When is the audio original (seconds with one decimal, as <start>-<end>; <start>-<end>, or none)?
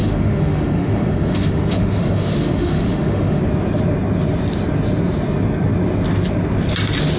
3.4-7.2